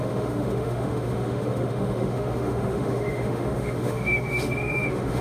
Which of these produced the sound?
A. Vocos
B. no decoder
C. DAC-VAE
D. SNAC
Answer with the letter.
C